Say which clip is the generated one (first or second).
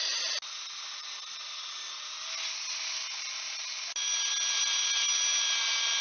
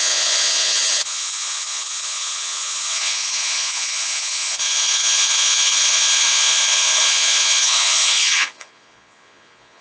second